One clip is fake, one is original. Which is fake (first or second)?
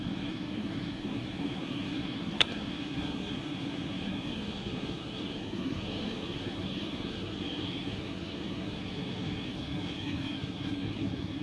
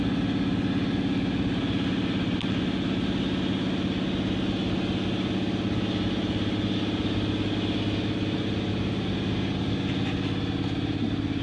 first